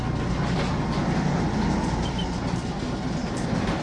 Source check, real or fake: real